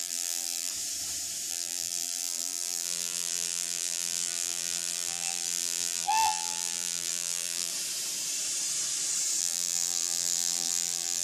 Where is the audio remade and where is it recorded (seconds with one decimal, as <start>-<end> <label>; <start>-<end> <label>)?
0.0-0.7 remade; 0.7-1.5 recorded; 1.5-7.7 remade; 7.7-9.4 recorded; 9.4-11.2 remade